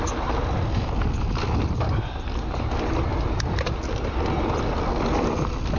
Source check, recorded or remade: recorded